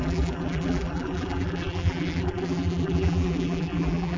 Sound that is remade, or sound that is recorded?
remade